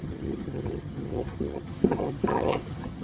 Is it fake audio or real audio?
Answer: fake